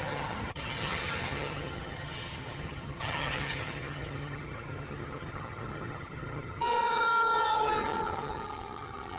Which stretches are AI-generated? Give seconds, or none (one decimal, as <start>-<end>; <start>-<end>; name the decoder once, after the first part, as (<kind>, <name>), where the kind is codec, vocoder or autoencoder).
0.0-9.2 (vocoder, HiFi-GAN)